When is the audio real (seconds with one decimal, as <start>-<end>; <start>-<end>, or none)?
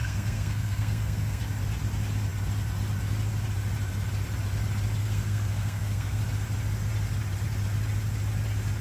1.4-5.0; 6.2-8.8